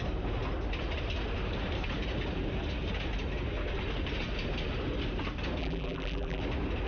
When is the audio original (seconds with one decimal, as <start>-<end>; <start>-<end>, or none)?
0.0-5.6; 6.4-6.9